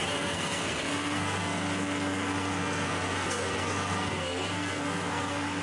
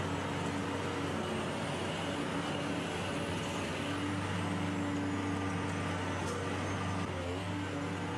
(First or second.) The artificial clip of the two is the first